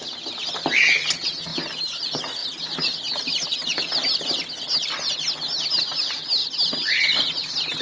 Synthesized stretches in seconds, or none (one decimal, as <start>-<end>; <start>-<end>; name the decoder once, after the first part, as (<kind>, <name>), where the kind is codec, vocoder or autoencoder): none